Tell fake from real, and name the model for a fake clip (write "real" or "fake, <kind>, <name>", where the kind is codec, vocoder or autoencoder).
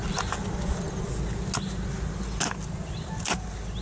real